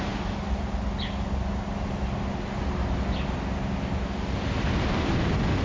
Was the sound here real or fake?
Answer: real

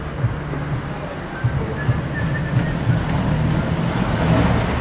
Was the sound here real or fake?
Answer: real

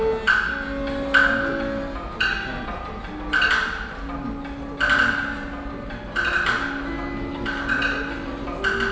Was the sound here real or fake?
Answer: real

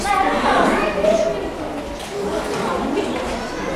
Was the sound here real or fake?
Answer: fake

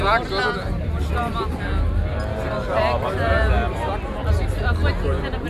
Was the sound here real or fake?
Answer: real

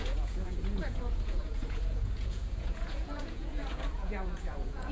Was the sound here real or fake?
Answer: fake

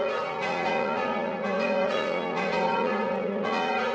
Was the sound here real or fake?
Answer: fake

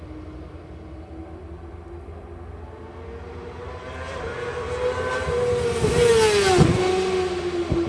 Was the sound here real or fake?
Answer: real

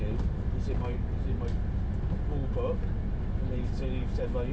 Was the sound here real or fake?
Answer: real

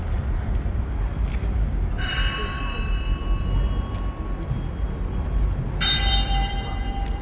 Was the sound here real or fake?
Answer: fake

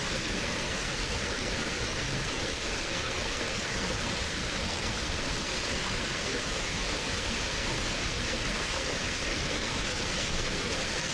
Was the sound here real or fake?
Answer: fake